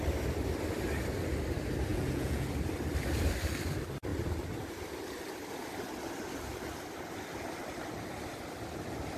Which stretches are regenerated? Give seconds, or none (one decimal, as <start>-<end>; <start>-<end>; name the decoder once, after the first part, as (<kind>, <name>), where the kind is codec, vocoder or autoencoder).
1.9-2.5 (vocoder, Vocos)